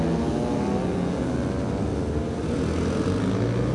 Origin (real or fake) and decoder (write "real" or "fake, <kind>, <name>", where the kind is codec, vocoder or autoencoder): real